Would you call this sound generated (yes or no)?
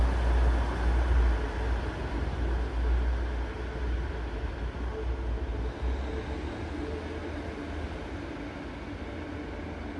no